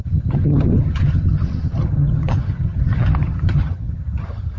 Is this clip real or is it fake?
fake